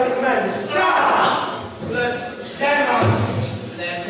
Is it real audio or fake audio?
real